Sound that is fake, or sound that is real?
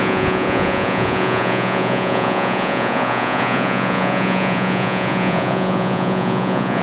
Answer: fake